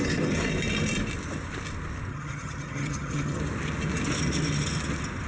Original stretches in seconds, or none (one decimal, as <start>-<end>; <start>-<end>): 0.0-2.1; 3.4-5.3